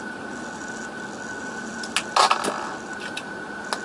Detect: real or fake real